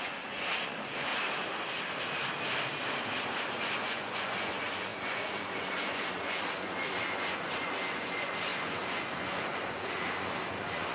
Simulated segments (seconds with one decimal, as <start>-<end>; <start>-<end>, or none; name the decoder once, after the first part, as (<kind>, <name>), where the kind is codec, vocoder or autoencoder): 0.0-1.1 (vocoder, Vocos); 3.6-10.9